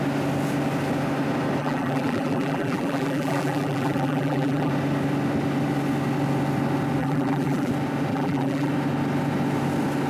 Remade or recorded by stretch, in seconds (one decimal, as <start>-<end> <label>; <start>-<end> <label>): 0.0-1.6 recorded; 1.6-4.7 remade; 4.7-7.0 recorded; 7.0-7.7 remade; 7.7-8.1 recorded; 8.1-8.7 remade; 8.7-10.1 recorded